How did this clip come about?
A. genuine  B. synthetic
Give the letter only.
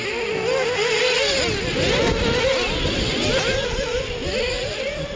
A